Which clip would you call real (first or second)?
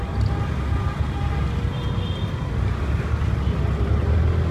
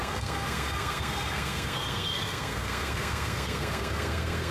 first